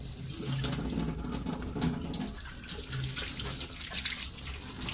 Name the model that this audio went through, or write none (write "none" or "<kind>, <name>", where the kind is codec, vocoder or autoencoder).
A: none